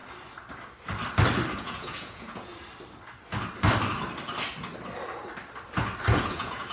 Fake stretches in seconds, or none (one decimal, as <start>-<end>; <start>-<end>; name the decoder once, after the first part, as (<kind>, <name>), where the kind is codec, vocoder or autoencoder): 1.6-2.5 (vocoder, Vocos); 6.1-6.7